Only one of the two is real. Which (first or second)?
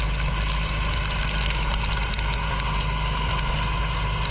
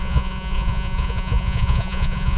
first